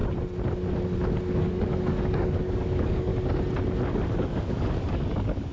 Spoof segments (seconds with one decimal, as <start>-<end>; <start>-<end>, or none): 1.3-3.1; 4.1-5.5

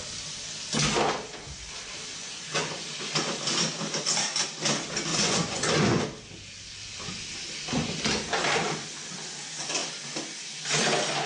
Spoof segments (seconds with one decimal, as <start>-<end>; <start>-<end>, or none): 2.2-2.8; 5.1-6.0

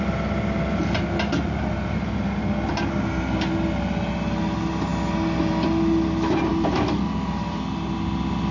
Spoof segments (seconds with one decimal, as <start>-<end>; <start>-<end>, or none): none

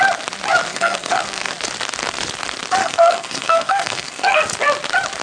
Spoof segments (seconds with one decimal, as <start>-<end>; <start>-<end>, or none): 0.7-1.5; 2.8-4.4

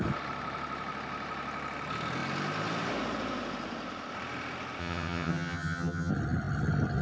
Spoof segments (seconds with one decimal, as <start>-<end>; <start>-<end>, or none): 4.8-6.1